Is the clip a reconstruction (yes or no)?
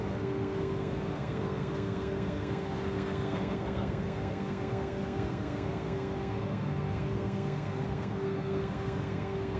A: yes